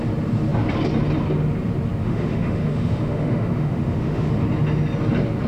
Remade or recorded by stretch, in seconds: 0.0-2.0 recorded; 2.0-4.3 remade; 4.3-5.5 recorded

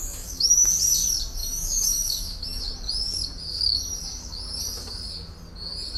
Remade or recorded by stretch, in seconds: 0.0-0.7 remade; 0.7-1.4 recorded; 1.4-2.6 remade; 2.6-6.0 recorded

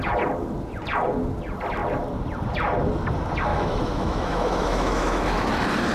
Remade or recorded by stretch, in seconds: 0.0-3.5 recorded; 3.5-5.5 remade; 5.5-5.9 recorded